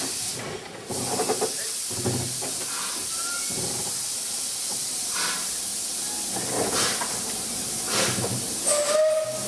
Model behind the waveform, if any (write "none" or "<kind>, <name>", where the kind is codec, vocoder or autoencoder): none